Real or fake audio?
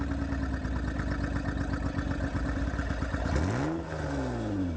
real